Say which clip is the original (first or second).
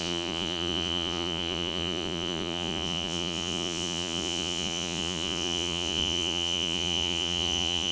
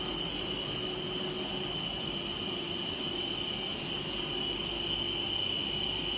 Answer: second